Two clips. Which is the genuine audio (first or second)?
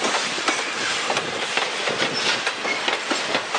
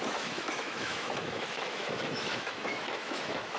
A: first